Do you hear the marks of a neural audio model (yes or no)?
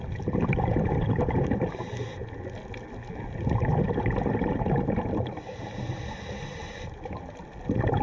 no